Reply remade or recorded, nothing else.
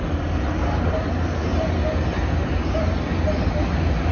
recorded